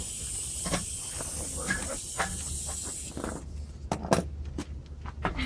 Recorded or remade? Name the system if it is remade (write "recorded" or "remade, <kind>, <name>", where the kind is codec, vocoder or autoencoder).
recorded